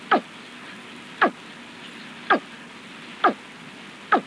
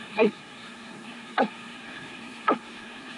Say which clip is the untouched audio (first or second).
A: first